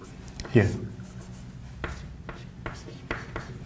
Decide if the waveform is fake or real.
real